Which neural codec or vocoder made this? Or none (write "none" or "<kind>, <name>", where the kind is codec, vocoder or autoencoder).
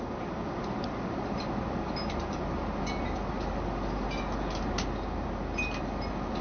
none